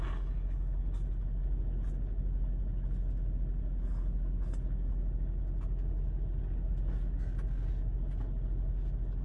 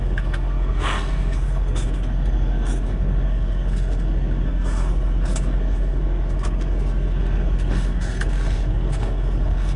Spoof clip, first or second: second